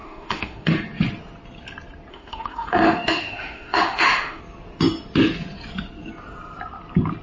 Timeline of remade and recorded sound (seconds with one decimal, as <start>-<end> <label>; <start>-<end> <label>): 0.0-0.7 remade; 0.7-2.1 recorded; 2.1-4.4 remade; 4.4-7.2 recorded